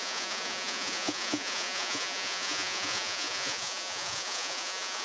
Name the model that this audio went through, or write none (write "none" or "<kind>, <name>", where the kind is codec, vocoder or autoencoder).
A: vocoder, Vocos